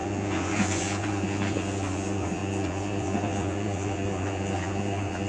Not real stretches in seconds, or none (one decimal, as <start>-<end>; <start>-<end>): 0.0-5.3